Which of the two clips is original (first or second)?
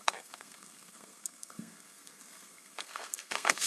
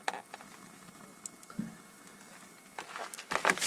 second